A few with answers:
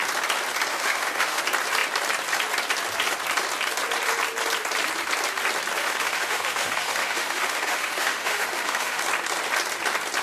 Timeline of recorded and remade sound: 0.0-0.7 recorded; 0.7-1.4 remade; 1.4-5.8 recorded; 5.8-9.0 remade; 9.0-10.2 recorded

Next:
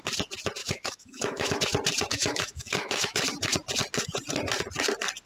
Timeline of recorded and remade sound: 0.0-0.6 recorded; 0.6-1.6 remade; 1.6-2.1 recorded; 2.1-3.2 remade; 3.2-5.3 recorded

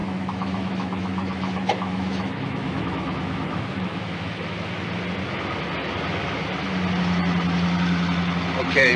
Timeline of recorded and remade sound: 0.0-4.7 remade; 4.7-9.0 recorded